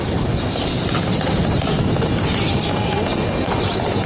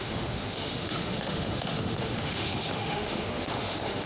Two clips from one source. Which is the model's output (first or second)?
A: second